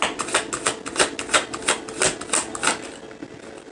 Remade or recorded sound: recorded